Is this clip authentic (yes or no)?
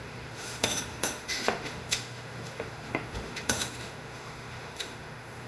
no